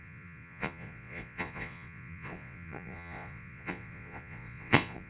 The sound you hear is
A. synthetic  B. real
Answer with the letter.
A